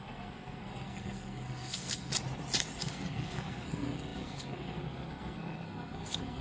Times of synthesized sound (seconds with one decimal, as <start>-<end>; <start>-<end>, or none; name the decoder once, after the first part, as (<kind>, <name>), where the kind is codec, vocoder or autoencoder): 0.0-2.1 (codec, SNAC); 2.8-6.4